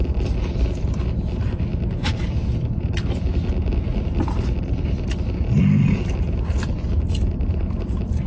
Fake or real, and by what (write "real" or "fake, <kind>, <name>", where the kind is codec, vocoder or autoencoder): real